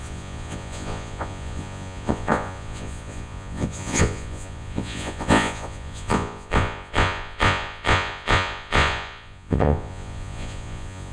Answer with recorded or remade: remade